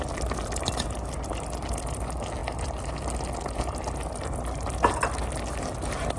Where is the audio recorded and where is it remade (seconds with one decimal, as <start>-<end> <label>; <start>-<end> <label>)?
0.0-6.2 recorded